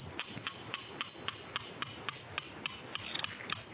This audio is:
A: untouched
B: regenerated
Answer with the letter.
A